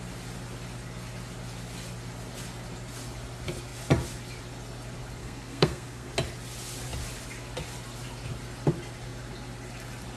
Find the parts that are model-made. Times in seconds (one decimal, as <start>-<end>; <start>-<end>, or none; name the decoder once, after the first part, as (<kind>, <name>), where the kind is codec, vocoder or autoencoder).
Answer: 5.2-6.1 (codec, SNAC)